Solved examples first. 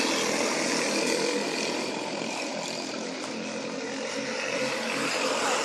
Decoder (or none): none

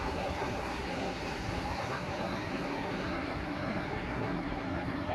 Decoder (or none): codec, SNAC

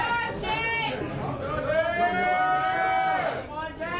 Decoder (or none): none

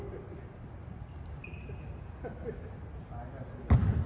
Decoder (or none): none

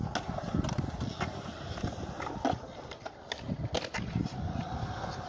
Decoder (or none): none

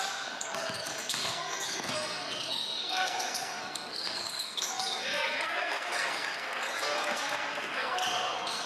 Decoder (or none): codec, SNAC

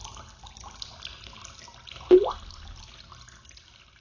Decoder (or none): none